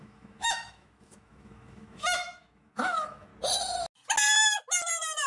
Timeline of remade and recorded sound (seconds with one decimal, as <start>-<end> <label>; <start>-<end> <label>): 0.0-3.3 remade; 3.3-5.3 recorded